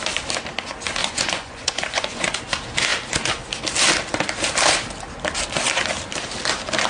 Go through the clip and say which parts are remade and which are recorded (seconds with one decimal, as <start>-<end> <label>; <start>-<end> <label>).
0.0-1.0 recorded; 1.0-2.4 remade; 2.4-6.9 recorded